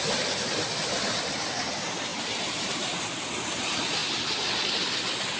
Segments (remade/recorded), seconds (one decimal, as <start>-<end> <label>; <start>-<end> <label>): 0.0-2.1 recorded; 2.1-3.0 remade; 3.0-5.4 recorded